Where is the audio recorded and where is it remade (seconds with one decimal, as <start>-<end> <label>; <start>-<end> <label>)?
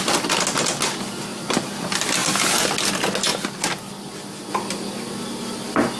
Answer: 0.0-1.3 recorded; 1.3-1.8 remade; 1.8-6.0 recorded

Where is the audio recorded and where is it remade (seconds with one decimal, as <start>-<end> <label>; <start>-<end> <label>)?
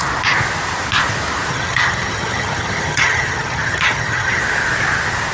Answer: 0.0-1.5 recorded; 1.5-4.4 remade; 4.4-5.3 recorded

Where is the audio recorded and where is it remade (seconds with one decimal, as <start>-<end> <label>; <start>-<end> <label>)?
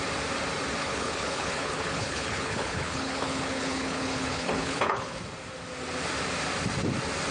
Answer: 0.0-0.8 recorded; 0.8-5.2 remade; 5.2-7.3 recorded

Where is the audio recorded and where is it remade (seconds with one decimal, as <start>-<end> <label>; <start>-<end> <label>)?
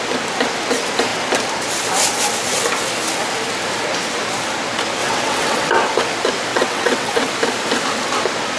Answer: 0.0-5.0 recorded; 5.0-5.7 remade; 5.7-6.5 recorded; 6.5-7.3 remade; 7.3-8.6 recorded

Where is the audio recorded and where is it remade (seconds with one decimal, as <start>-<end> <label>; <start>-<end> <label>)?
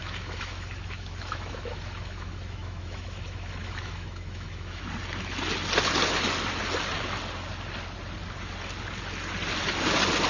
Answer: 0.0-4.8 remade; 4.8-10.3 recorded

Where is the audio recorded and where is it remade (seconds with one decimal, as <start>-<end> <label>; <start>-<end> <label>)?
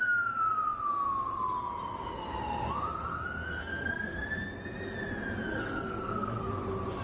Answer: 0.0-3.6 recorded; 3.6-4.2 remade; 4.2-5.5 recorded; 5.5-6.5 remade; 6.5-7.0 recorded